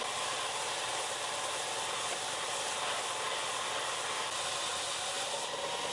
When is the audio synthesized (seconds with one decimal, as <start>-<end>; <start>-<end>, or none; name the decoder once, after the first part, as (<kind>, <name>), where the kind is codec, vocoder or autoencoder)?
none